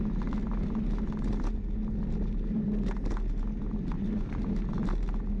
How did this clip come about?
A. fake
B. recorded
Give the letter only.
B